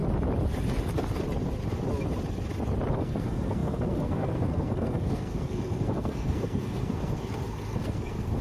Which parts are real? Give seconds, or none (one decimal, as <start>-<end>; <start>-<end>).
0.0-2.9